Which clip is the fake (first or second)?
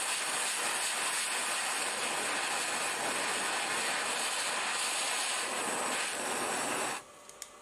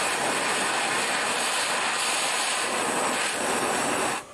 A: second